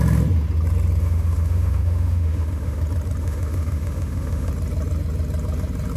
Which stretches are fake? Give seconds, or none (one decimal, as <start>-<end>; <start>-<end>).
1.0-2.8; 3.2-4.5